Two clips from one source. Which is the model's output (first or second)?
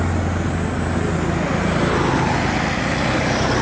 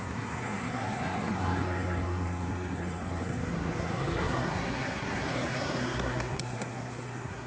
second